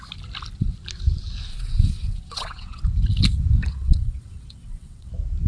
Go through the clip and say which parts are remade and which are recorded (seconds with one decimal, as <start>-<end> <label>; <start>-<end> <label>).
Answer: 0.0-1.5 recorded; 1.5-2.8 remade; 2.8-3.7 recorded; 3.7-5.1 remade; 5.1-5.5 recorded